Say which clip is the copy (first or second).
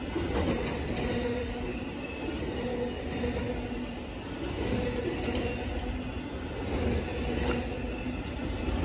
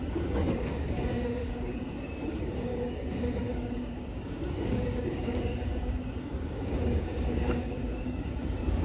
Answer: second